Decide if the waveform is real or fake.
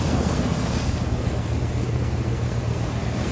fake